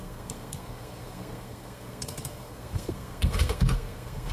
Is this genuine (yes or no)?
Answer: no